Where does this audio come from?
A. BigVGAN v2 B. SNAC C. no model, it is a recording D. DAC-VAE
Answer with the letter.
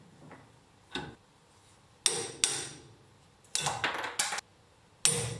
C